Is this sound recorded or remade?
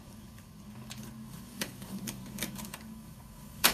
remade